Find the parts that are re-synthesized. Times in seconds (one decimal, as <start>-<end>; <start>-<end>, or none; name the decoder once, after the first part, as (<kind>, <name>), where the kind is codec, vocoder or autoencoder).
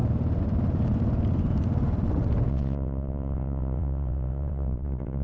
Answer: 2.5-5.2 (vocoder, WaveNeXt)